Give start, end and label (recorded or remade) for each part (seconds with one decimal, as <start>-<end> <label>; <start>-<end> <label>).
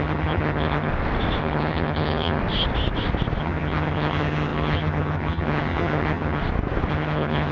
0.0-0.9 remade; 0.9-1.4 recorded; 1.4-2.4 remade; 2.4-3.4 recorded; 3.4-6.4 remade; 6.4-6.9 recorded; 6.9-7.5 remade